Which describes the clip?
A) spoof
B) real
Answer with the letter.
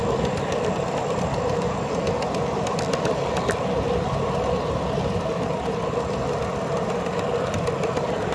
B